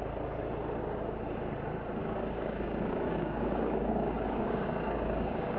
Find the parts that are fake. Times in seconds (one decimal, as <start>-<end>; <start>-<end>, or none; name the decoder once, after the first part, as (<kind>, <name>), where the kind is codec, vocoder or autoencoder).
2.0-5.6 (codec, DAC)